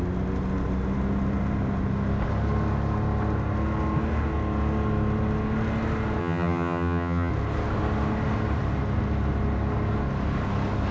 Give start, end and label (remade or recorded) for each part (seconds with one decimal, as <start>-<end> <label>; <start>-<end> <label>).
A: 0.0-6.2 recorded; 6.2-7.3 remade; 7.3-10.9 recorded